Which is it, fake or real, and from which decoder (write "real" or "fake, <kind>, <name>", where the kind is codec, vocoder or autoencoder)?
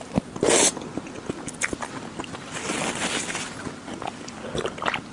real